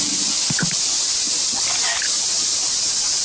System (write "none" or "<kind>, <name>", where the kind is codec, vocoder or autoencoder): none